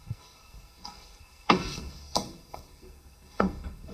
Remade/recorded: remade